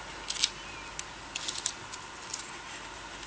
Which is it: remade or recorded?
recorded